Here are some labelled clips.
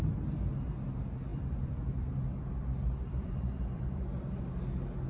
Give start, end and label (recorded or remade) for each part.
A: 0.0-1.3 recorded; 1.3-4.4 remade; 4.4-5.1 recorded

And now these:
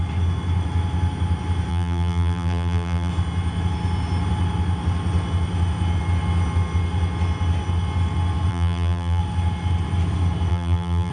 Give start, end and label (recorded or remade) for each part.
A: 0.0-1.7 recorded; 1.7-3.1 remade; 3.1-8.5 recorded; 8.5-9.2 remade; 9.2-10.5 recorded; 10.5-11.1 remade

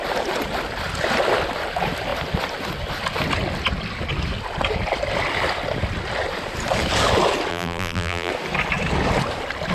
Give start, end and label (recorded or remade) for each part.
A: 0.0-7.5 recorded; 7.5-8.3 remade; 8.3-9.7 recorded

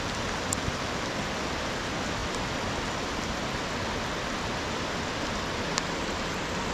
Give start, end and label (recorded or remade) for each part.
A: 0.0-6.7 recorded